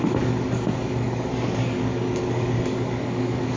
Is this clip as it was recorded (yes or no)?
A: no